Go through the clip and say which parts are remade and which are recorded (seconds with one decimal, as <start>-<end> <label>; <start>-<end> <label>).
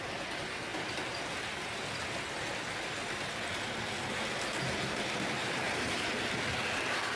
0.0-5.4 recorded; 5.4-6.1 remade; 6.1-7.2 recorded